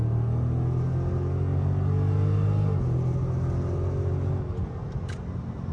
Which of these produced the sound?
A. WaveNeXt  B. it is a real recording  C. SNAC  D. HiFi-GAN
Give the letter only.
B